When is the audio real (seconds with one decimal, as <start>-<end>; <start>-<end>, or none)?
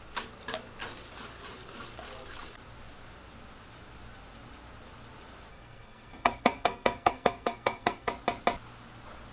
0.0-5.5; 8.1-9.3